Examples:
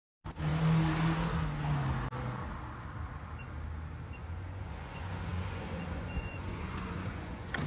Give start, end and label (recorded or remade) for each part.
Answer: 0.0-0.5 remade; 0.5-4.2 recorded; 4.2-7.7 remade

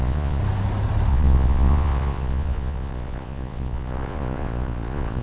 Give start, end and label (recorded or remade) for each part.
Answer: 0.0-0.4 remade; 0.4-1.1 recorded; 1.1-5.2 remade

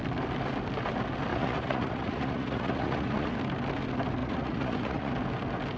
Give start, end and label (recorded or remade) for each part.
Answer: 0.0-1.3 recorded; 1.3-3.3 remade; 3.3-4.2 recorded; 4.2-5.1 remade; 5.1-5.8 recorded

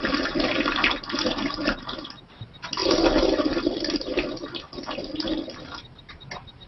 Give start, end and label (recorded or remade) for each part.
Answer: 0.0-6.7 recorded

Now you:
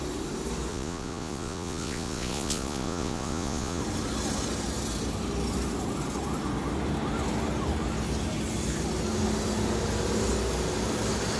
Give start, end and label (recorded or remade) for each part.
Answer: 0.0-0.7 recorded; 0.7-3.8 remade; 3.8-11.4 recorded

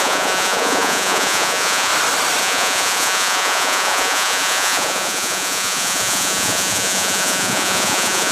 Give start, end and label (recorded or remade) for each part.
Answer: 0.0-1.9 remade; 1.9-2.4 recorded; 2.4-8.3 remade

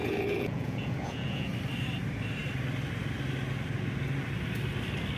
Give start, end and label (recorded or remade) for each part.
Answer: 0.0-1.5 remade; 1.5-5.2 recorded